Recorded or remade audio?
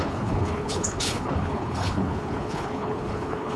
remade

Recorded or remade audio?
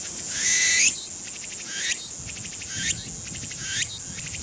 recorded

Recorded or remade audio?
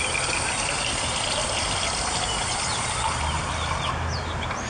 recorded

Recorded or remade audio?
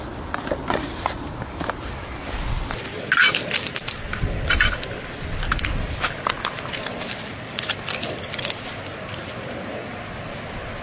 recorded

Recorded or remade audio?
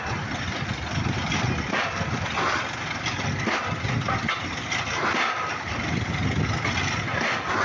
recorded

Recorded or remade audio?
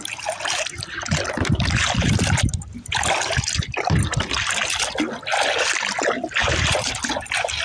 recorded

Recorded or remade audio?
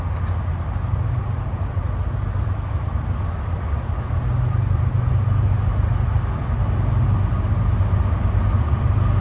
recorded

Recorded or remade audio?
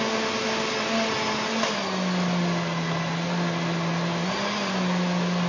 recorded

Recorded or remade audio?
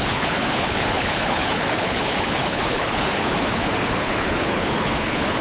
remade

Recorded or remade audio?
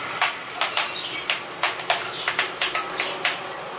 recorded